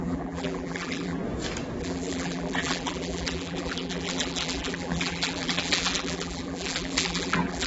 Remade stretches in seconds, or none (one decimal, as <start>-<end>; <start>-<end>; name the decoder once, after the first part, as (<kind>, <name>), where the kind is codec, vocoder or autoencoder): 0.0-1.2 (vocoder, BigVGAN v2); 1.8-7.7